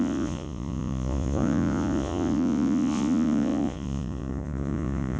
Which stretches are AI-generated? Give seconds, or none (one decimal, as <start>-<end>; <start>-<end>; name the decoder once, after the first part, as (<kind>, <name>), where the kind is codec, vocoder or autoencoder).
0.0-5.2 (vocoder, Vocos)